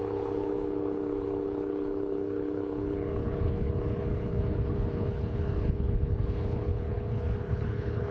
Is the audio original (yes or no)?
no